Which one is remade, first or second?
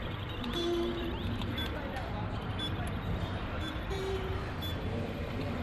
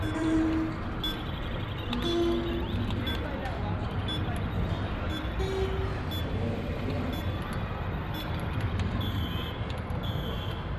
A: first